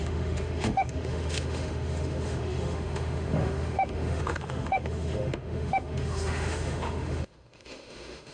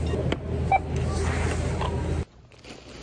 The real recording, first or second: second